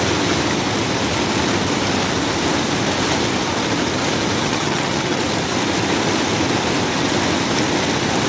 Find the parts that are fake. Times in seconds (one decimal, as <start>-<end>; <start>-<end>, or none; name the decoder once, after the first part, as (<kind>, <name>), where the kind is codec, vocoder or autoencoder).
4.4-5.2 (vocoder, HiFi-GAN)

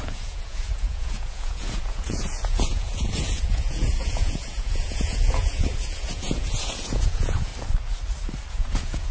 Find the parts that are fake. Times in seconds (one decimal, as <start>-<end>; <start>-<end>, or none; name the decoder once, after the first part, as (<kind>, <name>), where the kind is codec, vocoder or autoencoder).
0.0-7.5 (vocoder, Vocos); 8.5-9.1

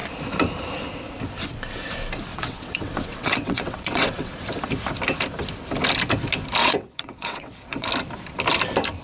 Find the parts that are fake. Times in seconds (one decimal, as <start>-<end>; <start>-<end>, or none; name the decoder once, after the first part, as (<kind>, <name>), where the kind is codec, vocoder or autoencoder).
2.3-4.3 (vocoder, WaveNeXt); 6.6-7.9

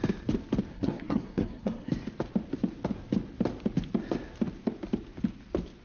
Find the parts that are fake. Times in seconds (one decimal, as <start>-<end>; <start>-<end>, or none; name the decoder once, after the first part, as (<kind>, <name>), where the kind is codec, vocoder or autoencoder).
0.7-1.9 (codec, SNAC)

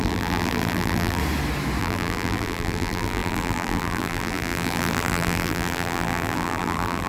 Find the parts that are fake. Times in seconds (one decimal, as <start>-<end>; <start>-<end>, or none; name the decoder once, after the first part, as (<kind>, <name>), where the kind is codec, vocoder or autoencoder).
0.0-1.2 (vocoder, BigVGAN v2); 1.8-7.1

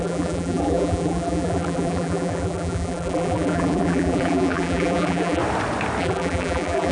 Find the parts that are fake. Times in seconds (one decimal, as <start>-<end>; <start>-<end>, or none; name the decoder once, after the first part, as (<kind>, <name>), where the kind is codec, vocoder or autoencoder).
0.0-5.4 (vocoder, BigVGAN v2); 6.0-6.9

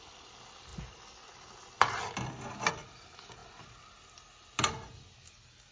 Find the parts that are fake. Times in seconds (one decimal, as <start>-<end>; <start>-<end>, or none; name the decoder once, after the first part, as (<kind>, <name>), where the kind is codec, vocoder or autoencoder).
none